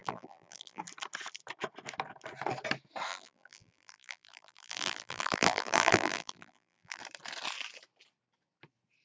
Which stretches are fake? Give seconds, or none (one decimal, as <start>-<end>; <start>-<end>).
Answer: 0.0-0.8; 3.1-7.0

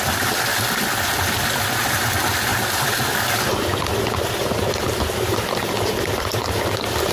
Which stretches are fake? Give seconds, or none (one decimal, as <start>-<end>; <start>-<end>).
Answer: 2.5-5.7

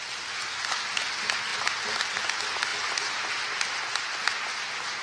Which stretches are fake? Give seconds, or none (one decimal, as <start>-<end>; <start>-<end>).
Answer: none